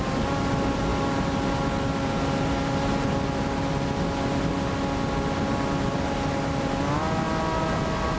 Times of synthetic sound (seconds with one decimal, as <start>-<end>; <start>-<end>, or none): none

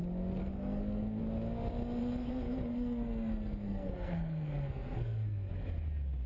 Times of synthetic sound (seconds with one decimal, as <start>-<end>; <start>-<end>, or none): 0.4-1.2; 2.0-5.5

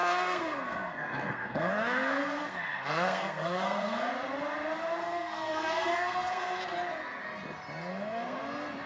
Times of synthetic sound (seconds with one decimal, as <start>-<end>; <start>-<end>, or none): 0.0-4.1; 5.0-6.6; 7.9-8.4

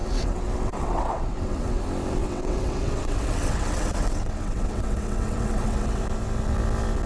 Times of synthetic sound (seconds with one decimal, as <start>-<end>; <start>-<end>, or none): 0.0-1.8; 2.2-6.0

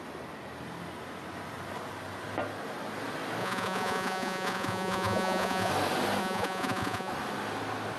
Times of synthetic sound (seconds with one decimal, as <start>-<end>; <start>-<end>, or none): 3.4-5.7; 6.2-7.1

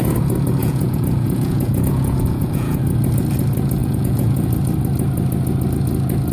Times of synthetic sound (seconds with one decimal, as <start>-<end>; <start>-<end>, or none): 0.6-2.8; 3.8-4.5

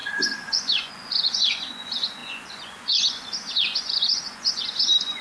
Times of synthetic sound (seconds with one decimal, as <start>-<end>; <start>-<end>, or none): 0.0-5.2

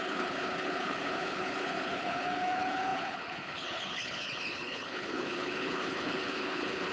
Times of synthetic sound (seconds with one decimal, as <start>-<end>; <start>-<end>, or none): 0.0-6.9